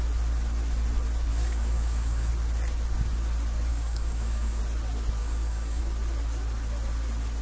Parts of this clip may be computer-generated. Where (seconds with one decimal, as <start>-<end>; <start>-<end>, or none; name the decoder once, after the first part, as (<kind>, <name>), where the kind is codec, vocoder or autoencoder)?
1.3-2.3 (codec, DAC); 3.7-4.6; 5.2-5.8